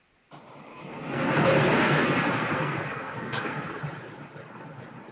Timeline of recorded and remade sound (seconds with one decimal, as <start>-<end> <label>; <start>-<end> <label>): 0.0-0.7 recorded; 0.7-3.8 remade; 3.8-5.1 recorded